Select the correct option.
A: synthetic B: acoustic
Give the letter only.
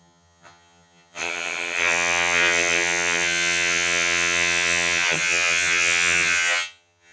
A